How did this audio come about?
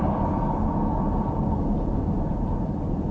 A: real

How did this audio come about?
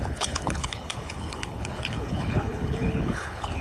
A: fake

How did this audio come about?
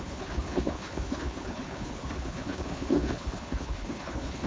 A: fake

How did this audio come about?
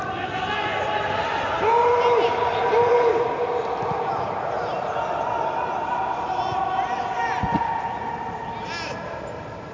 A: real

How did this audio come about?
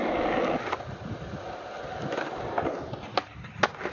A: real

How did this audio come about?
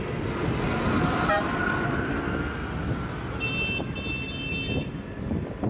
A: real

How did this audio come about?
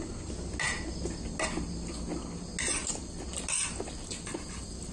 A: real